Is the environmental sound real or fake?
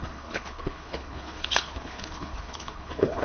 fake